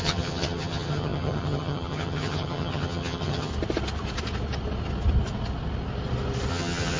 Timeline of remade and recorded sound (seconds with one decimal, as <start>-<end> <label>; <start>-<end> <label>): 0.0-3.5 remade; 3.5-6.5 recorded; 6.5-7.0 remade